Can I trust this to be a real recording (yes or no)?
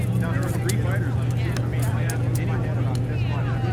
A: yes